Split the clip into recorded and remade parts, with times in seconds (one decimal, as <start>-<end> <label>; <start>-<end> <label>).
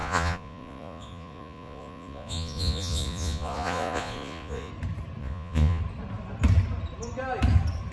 0.0-4.7 remade; 4.7-5.2 recorded; 5.2-5.8 remade; 5.8-7.9 recorded